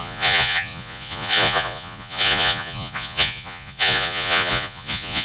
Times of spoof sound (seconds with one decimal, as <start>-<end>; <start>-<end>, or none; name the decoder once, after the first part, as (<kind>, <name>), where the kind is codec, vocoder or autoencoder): 0.0-5.2 (vocoder, Vocos)